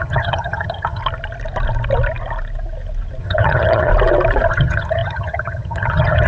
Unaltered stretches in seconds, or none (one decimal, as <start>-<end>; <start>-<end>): 1.0-3.2; 3.9-4.5